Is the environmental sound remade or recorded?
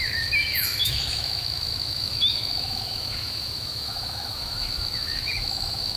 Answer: remade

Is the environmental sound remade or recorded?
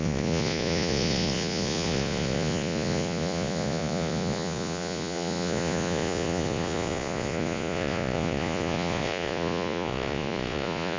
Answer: remade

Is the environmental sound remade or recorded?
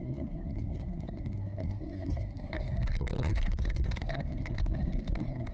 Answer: remade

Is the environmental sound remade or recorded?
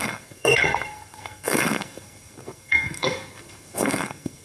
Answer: remade